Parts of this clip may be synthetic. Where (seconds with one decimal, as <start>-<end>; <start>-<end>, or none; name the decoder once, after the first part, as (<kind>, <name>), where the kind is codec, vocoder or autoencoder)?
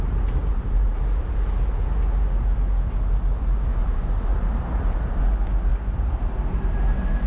0.4-1.5 (vocoder, BigVGAN v2); 3.8-5.2; 5.7-6.8